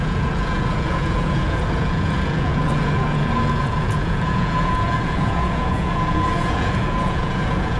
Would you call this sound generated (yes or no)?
yes